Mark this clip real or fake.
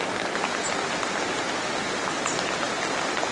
real